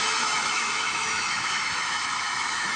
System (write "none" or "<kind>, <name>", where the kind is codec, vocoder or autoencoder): autoencoder, DAC-VAE